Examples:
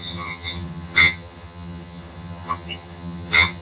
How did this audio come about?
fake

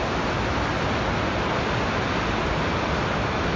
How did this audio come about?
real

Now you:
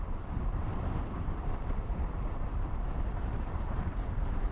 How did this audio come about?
fake